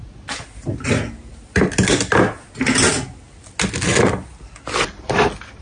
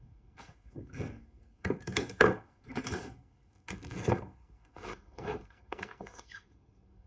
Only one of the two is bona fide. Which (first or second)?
first